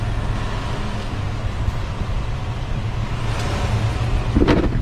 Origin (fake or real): real